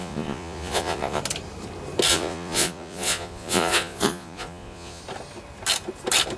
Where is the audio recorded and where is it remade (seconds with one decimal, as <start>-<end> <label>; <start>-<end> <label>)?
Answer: 0.0-1.2 remade; 1.2-2.1 recorded; 2.1-5.0 remade; 5.0-6.4 recorded